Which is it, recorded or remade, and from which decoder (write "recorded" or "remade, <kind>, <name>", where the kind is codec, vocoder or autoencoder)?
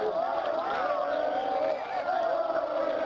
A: recorded